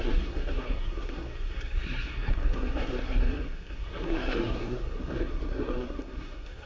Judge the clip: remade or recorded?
remade